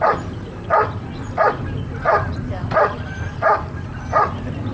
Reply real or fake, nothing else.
real